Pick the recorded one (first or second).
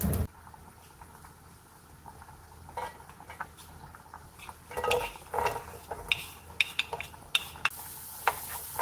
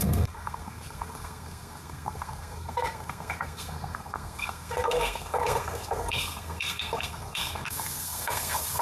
first